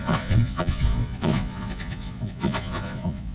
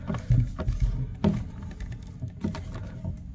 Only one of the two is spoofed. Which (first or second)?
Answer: first